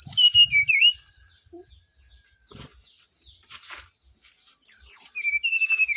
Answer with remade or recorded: recorded